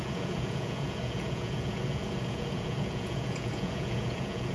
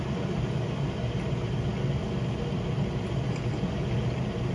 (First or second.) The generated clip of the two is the first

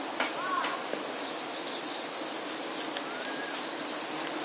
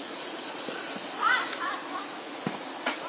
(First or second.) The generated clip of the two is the second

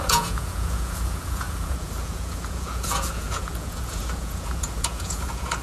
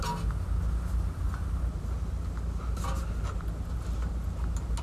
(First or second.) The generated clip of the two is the first